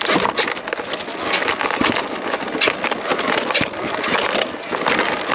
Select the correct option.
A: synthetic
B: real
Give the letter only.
B